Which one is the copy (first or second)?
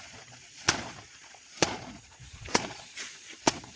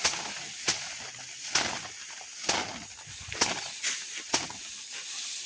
first